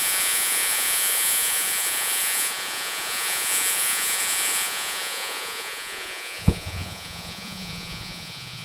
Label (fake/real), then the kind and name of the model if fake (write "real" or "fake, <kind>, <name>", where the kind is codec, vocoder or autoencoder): fake, vocoder, Vocos